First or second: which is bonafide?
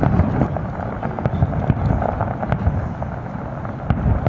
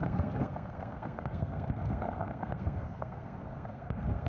first